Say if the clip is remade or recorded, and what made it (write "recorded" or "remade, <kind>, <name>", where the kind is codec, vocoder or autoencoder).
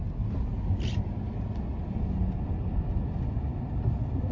recorded